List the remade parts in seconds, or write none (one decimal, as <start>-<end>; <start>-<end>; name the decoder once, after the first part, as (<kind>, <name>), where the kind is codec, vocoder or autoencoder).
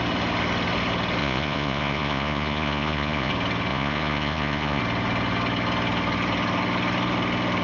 1.2-3.3 (vocoder, Vocos); 3.7-4.8